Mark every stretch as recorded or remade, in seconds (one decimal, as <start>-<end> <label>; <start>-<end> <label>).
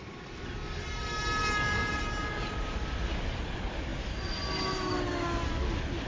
0.0-6.1 recorded